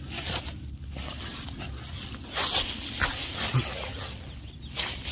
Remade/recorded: recorded